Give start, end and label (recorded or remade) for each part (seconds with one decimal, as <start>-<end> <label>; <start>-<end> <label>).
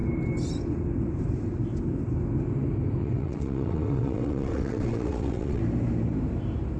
0.0-3.0 recorded; 3.0-5.6 remade; 5.6-6.8 recorded